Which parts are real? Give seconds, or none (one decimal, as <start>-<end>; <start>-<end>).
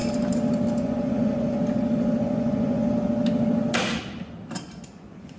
0.0-0.8; 1.6-2.2; 2.8-4.9